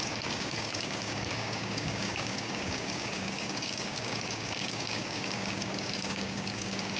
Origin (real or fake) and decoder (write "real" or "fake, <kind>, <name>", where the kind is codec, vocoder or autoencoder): fake, codec, DAC